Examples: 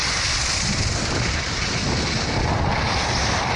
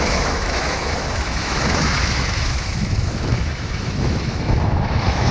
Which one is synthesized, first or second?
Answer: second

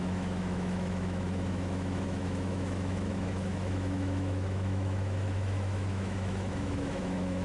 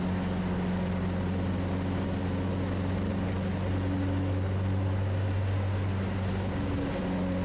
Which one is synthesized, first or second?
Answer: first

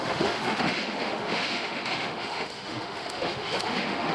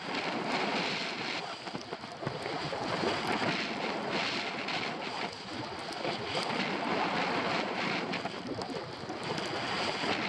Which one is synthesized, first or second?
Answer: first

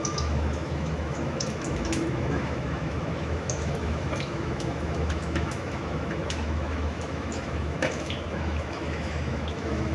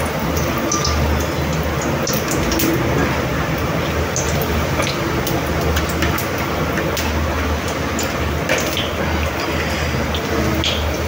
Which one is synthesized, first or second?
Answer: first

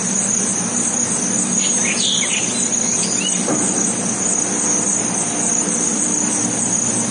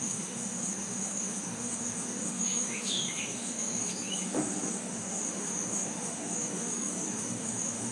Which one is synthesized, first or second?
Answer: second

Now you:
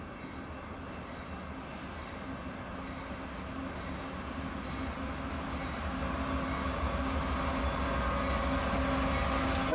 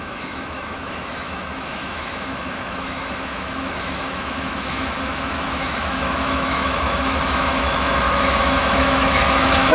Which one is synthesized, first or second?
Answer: second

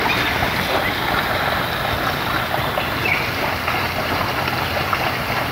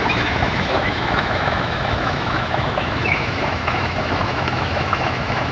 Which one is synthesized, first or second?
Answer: second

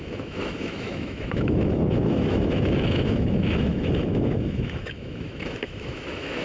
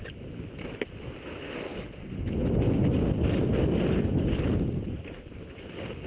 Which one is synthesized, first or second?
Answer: first